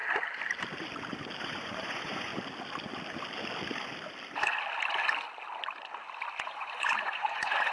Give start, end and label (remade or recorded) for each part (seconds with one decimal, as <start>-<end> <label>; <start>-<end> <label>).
0.0-1.4 recorded; 1.4-2.3 remade; 2.3-6.4 recorded; 6.4-7.7 remade